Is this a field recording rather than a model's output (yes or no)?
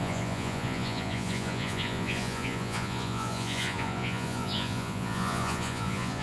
no